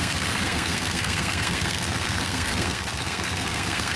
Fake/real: fake